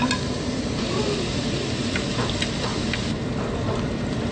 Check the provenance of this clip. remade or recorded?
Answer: recorded